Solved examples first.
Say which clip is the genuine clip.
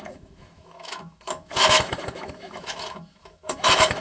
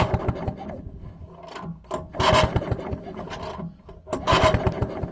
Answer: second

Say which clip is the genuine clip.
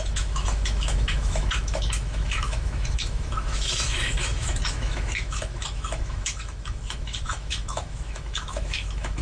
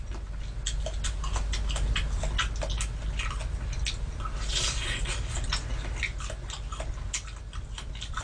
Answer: second